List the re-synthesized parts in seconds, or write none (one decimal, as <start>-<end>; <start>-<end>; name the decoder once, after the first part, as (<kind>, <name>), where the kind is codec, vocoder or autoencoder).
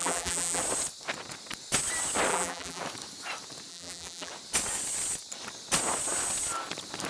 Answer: 0.0-0.6 (vocoder, BigVGAN v2); 2.3-2.8; 3.7-4.3